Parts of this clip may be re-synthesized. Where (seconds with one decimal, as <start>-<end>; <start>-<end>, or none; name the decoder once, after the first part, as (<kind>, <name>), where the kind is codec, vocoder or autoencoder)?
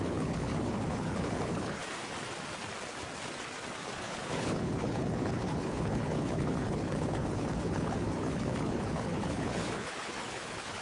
0.0-1.8 (codec, HILCodec); 3.9-10.8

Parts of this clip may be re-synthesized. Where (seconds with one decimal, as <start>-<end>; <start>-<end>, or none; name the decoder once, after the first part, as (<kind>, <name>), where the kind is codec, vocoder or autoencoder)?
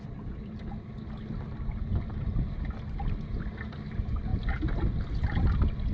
none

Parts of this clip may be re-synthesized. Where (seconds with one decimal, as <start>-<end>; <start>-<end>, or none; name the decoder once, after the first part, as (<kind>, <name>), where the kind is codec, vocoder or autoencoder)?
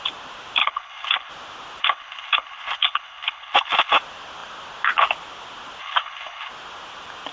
0.6-1.3 (codec, HILCodec); 1.8-4.0; 5.8-6.5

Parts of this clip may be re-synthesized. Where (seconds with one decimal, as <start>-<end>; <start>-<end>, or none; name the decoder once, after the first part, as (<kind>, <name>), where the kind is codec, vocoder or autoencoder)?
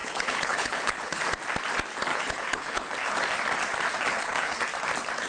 0.0-1.2 (codec, HILCodec); 2.1-2.9; 4.1-4.6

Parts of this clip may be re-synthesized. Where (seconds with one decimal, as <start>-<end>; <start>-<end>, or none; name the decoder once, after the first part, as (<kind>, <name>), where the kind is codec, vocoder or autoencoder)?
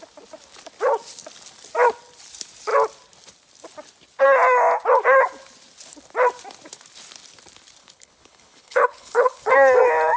7.8-9.5 (codec, HILCodec)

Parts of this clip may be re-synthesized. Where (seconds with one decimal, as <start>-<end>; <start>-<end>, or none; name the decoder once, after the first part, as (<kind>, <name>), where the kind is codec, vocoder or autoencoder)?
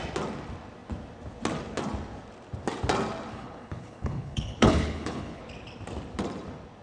3.3-5.4 (codec, HILCodec)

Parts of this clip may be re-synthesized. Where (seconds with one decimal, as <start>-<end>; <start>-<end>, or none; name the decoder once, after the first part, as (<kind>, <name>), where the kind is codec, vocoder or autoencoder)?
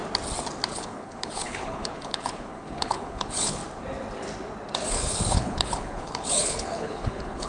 0.7-3.6 (codec, HILCodec); 4.9-7.5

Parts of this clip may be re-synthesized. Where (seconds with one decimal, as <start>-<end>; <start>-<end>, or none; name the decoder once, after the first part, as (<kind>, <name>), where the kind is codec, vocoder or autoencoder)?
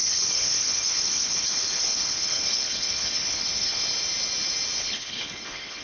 0.0-3.8 (codec, HILCodec); 4.8-5.8